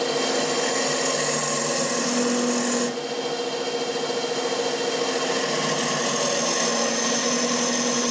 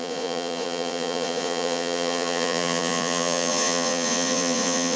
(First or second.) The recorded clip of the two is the first